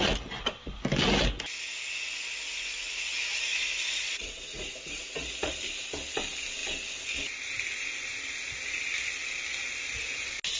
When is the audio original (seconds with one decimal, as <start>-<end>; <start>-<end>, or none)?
0.0-1.9; 5.5-10.6